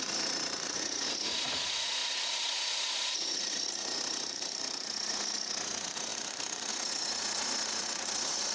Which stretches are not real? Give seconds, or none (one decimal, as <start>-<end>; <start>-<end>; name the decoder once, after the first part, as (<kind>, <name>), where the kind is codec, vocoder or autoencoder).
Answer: 0.0-8.5 (vocoder, Vocos)